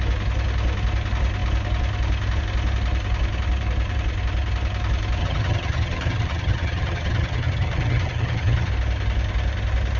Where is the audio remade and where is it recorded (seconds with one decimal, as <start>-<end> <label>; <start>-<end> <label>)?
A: 0.0-5.2 recorded; 5.2-8.7 remade; 8.7-10.0 recorded